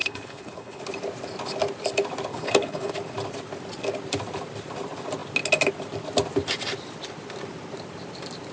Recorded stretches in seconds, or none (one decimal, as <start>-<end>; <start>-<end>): 0.8-2.3; 2.9-8.5